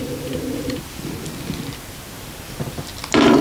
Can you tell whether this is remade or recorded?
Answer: recorded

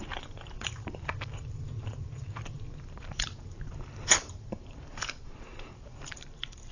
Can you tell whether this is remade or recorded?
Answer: remade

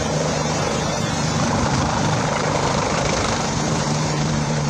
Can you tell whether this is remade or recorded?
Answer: remade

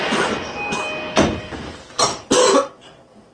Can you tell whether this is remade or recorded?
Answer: recorded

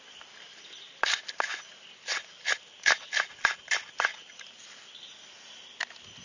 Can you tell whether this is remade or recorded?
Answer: recorded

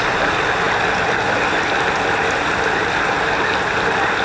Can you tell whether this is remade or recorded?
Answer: recorded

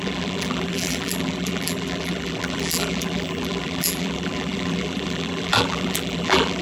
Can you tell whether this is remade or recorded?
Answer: remade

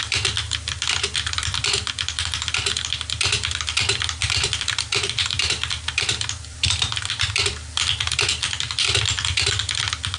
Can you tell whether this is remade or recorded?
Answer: remade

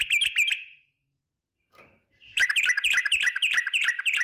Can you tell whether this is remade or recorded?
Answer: remade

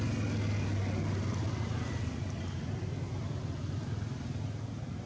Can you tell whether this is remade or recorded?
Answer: recorded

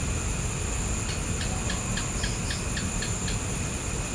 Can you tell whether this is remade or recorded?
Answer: recorded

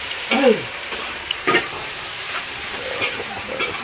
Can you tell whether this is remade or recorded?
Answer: remade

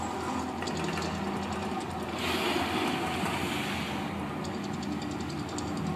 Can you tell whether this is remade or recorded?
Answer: recorded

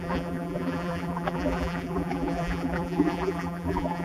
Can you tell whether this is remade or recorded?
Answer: remade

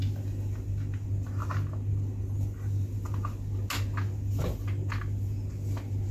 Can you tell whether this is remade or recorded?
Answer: recorded